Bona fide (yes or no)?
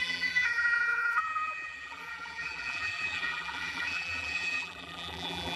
no